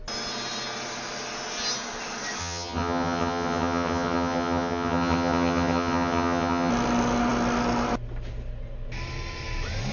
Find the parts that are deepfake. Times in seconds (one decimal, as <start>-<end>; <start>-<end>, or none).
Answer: 2.4-6.7